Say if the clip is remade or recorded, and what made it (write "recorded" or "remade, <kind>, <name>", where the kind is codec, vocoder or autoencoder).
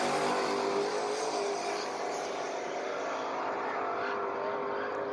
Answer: recorded